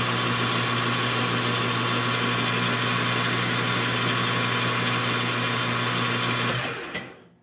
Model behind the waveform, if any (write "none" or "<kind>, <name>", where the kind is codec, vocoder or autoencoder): none